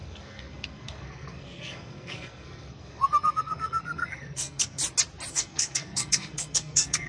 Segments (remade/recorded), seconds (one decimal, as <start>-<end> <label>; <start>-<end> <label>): 0.0-4.8 remade; 4.8-5.3 recorded; 5.3-7.1 remade